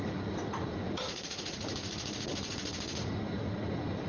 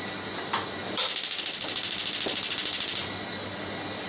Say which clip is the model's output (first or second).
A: first